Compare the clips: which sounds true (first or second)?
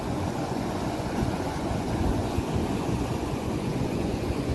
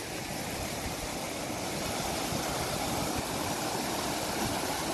second